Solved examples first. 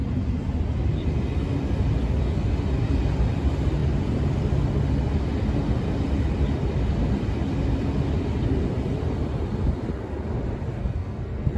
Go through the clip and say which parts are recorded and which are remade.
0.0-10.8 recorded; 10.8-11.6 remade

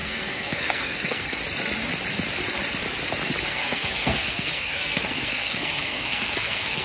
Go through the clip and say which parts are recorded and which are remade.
0.0-1.4 remade; 1.4-3.4 recorded; 3.4-6.8 remade

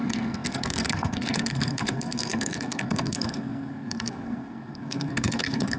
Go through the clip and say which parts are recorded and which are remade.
0.0-5.8 remade